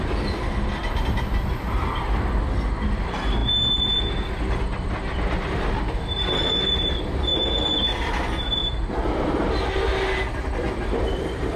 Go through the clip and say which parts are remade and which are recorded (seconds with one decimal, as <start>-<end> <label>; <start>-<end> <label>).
0.0-0.8 recorded; 0.8-1.5 remade; 1.5-8.6 recorded; 8.6-9.7 remade; 9.7-11.6 recorded